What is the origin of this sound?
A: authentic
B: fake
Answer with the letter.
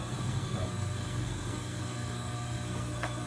B